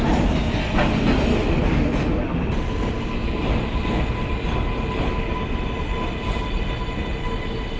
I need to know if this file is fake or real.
real